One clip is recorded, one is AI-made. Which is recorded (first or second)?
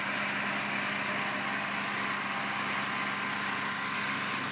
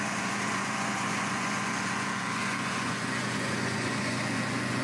first